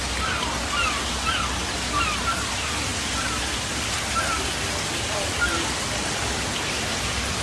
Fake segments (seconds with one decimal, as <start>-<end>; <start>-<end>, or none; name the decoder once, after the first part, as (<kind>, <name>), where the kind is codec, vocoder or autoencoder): none